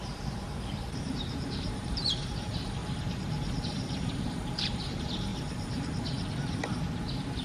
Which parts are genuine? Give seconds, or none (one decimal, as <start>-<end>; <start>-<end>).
2.8-4.2; 5.3-7.4